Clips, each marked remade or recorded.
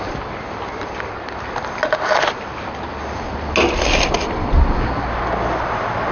recorded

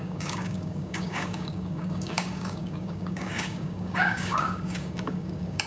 remade